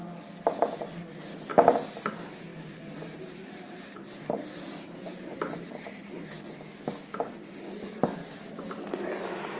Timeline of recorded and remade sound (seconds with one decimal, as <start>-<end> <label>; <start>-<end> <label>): 0.0-1.5 recorded; 1.5-2.1 remade; 2.1-2.5 recorded; 2.5-4.2 remade; 4.2-9.6 recorded